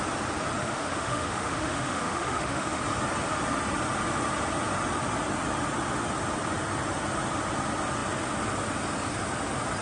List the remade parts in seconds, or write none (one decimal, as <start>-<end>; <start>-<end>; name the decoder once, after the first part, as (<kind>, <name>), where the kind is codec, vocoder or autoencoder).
0.6-2.8 (autoencoder, DAC-VAE)